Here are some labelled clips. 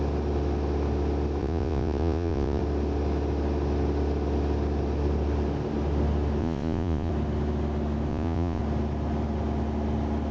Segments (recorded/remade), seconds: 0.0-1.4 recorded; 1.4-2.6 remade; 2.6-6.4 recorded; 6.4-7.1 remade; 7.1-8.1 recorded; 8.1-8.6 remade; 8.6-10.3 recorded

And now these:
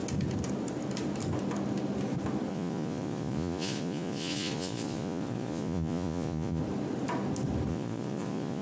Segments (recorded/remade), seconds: 0.0-2.5 recorded; 2.5-6.6 remade; 6.6-7.7 recorded; 7.7-8.6 remade